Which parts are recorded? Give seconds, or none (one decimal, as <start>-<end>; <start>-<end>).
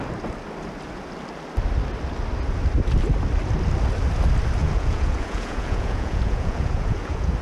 0.0-4.6